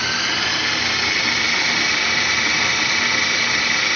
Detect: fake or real real